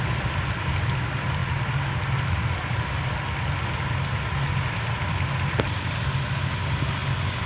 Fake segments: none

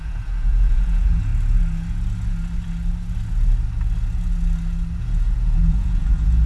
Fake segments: 0.0-1.3 (vocoder, Vocos); 5.0-6.5

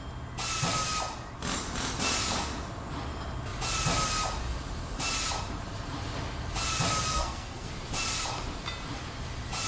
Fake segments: 7.1-7.7 (codec, SNAC)

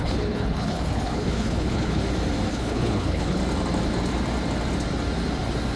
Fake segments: 0.0-2.0 (codec, HILCodec); 2.5-3.4

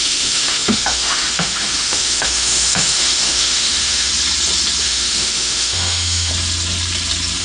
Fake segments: 0.0-4.1 (autoencoder, DAC-VAE); 4.8-6.3

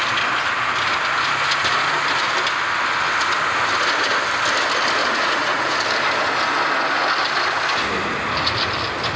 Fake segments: 5.0-5.8 (vocoder, Vocos)